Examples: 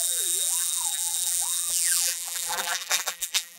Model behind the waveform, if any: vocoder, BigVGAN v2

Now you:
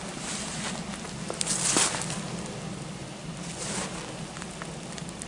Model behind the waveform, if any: none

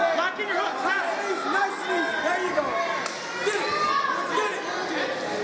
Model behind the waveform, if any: none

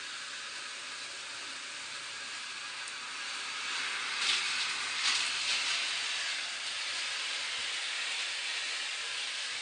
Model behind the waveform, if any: none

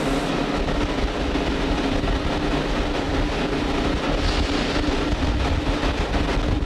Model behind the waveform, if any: none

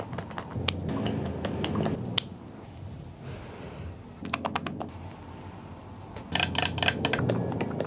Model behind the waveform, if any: none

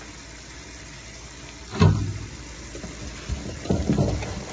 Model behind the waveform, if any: none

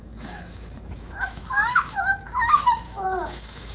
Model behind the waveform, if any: autoencoder, DAC-VAE